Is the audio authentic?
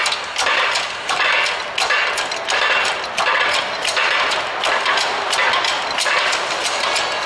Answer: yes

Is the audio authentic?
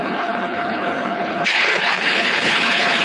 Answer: no